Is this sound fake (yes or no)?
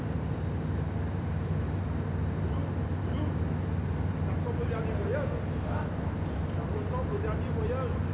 no